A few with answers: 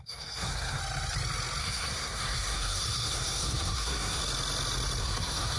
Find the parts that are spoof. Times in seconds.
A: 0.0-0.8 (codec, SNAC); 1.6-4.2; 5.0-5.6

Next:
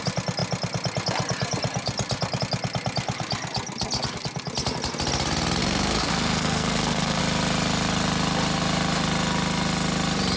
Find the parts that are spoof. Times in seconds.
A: 5.6-7.2 (codec, SNAC)

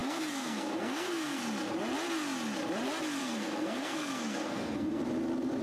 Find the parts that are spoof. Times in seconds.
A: 0.0-1.4 (codec, SNAC); 3.2-5.0

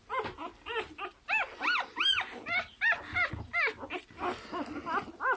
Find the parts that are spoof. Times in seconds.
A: none